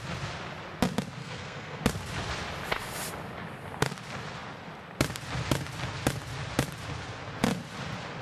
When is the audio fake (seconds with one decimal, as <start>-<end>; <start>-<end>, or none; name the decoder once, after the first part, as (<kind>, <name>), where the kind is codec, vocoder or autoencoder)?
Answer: 1.2-1.8 (codec, SNAC)